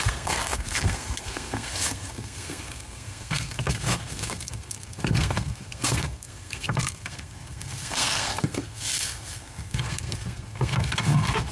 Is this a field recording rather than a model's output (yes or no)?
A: no